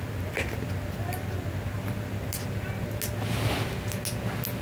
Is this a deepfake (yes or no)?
no